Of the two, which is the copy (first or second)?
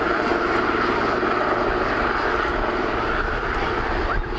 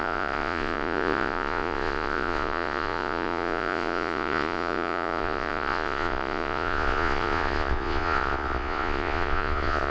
second